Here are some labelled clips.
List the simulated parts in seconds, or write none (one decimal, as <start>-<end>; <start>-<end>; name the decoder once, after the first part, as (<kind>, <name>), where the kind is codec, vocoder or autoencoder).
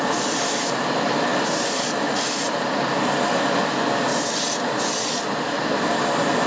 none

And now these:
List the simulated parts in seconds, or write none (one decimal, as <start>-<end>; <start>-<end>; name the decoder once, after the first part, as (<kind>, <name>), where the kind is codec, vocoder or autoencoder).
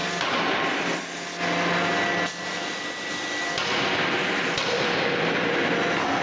none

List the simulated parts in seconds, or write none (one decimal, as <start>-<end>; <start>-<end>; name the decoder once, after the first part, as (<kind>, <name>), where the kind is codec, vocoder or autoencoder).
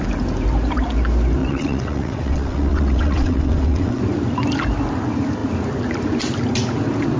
1.4-4.0 (vocoder, WaveNeXt)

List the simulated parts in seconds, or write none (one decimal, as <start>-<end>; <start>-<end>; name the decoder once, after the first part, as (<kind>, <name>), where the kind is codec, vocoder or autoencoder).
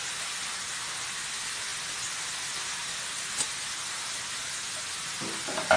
none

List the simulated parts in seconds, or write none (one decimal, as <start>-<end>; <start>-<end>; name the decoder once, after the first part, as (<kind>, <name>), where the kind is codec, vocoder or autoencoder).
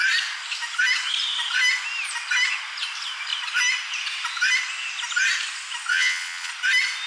5.9-6.5 (vocoder, WaveNeXt)